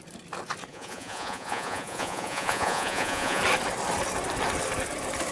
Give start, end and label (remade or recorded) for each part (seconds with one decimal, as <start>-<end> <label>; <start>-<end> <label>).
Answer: 0.0-0.7 recorded; 0.7-3.4 remade; 3.4-5.3 recorded